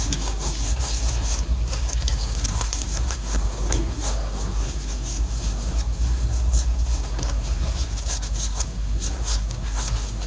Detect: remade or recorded remade